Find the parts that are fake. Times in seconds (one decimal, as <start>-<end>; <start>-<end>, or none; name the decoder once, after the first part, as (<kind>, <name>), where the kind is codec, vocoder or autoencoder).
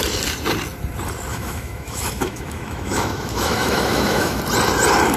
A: 1.3-4.4 (autoencoder, DAC-VAE)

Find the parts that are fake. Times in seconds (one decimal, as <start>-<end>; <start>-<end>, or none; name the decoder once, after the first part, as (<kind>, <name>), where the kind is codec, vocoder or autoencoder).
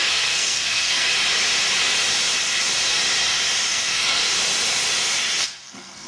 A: 0.0-1.1 (codec, SNAC); 3.7-4.2; 5.4-6.1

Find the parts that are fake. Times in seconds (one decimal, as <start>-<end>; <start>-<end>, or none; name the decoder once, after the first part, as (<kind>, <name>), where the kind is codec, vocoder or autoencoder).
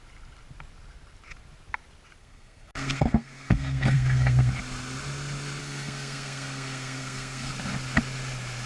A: 2.2-4.5 (codec, SNAC); 5.6-7.5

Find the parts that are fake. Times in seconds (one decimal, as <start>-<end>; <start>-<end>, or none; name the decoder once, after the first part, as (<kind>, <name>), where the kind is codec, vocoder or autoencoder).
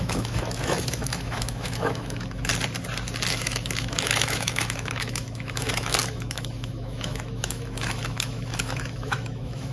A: 0.0-2.5 (autoencoder, DAC-VAE); 3.3-9.7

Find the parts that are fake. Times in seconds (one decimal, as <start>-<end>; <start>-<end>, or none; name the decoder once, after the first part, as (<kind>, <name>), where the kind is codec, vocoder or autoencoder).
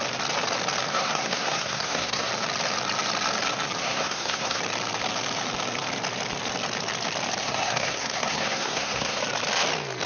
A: 0.9-2.3 (codec, SNAC); 3.8-4.6; 7.4-9.2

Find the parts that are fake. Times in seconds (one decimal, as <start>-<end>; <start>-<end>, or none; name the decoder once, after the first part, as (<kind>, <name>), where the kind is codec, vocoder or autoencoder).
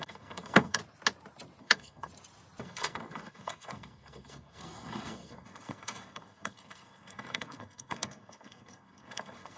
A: 0.0-0.8 (codec, SNAC); 1.6-2.1; 2.6-9.6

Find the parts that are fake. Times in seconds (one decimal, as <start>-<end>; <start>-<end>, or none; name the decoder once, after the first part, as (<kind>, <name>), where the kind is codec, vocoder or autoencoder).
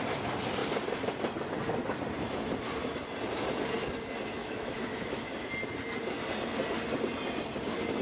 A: 4.4-5.3 (autoencoder, DAC-VAE)